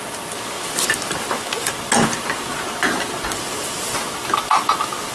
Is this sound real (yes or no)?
yes